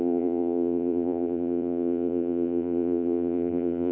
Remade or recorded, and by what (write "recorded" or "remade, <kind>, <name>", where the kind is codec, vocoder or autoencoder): remade, vocoder, BigVGAN v2